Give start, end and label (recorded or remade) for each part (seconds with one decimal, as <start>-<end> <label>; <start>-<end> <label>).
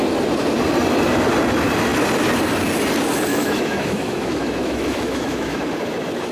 0.0-3.3 recorded; 3.3-5.7 remade; 5.7-6.3 recorded